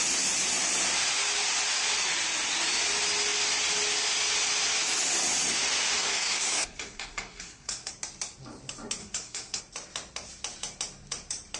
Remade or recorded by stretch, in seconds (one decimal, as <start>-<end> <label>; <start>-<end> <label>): 0.0-6.0 recorded; 6.0-7.9 remade; 7.9-9.0 recorded; 9.0-9.6 remade; 9.6-11.6 recorded